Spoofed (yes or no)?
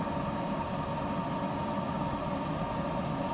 no